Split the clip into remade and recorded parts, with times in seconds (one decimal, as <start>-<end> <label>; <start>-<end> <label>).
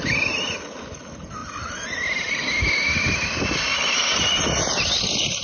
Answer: 0.0-5.4 recorded